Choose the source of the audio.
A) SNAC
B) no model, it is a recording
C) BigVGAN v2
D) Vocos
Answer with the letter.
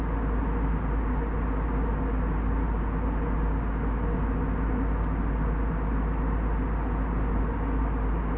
B